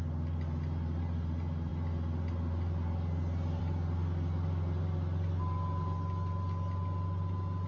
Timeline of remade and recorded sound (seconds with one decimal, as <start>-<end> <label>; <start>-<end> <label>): 0.0-7.7 recorded